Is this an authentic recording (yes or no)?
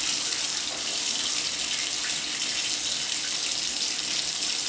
yes